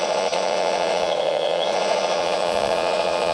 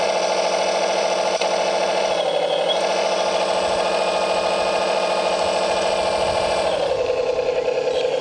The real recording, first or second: second